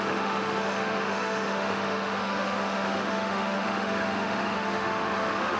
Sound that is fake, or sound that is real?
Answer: fake